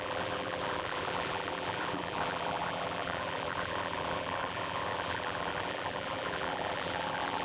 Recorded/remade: remade